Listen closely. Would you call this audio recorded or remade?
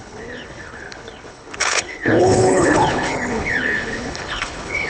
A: remade